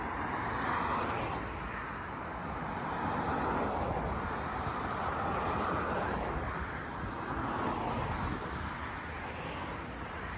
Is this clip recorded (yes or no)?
yes